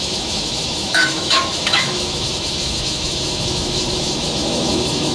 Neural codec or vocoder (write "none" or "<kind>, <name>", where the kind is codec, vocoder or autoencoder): autoencoder, DAC-VAE